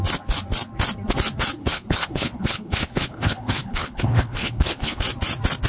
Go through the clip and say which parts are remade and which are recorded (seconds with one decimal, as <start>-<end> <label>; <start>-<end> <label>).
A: 0.0-1.6 recorded; 1.6-5.0 remade; 5.0-5.7 recorded